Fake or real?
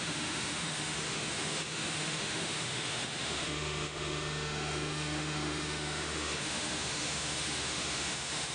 fake